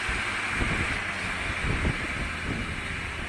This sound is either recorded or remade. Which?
recorded